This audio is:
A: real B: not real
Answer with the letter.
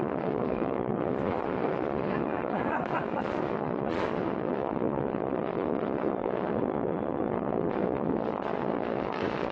B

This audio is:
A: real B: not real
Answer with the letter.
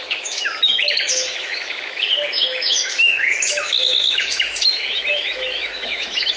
B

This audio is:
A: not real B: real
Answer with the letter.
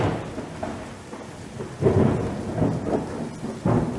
B